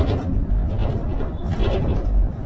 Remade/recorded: recorded